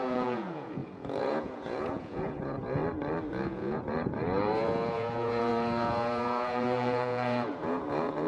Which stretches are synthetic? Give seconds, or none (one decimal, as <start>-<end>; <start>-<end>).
0.0-2.8; 3.3-8.3